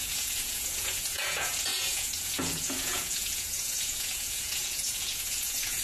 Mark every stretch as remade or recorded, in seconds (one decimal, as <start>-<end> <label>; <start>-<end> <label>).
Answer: 0.0-5.8 remade